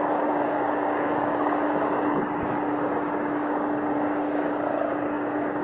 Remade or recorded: remade